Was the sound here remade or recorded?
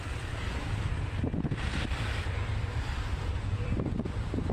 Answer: remade